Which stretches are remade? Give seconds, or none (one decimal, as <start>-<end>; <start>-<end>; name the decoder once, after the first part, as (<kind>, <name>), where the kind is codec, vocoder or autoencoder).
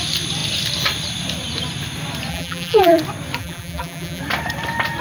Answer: 2.3-3.0 (vocoder, BigVGAN v2); 3.4-4.2